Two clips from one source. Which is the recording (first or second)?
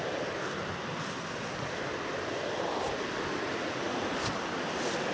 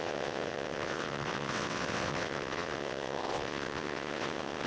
first